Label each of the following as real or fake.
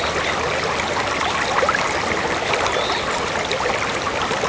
real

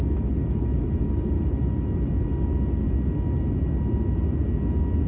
real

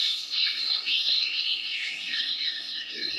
fake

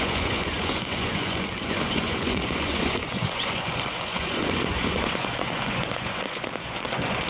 fake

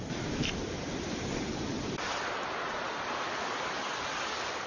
real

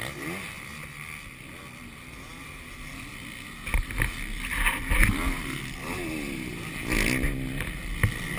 real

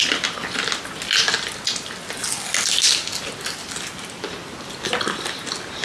real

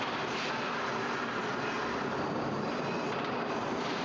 real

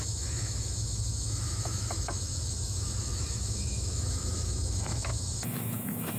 fake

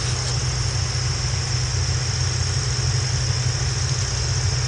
real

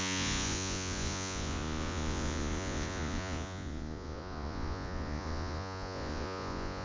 fake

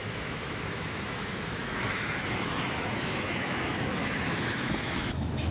fake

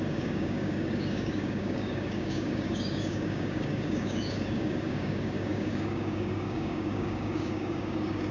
fake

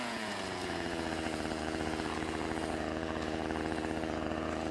fake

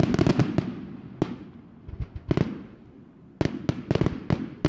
real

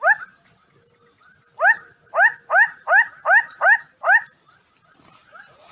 real